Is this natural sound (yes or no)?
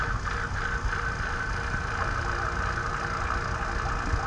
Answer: yes